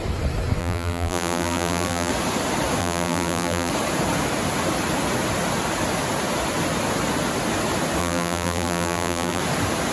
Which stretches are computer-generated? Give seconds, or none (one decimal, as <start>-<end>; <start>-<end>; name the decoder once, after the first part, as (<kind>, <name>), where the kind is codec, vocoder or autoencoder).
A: 0.6-2.1 (vocoder, BigVGAN v2); 2.8-3.7; 8.0-9.4